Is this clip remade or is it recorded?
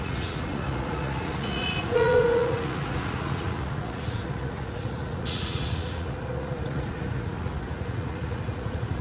remade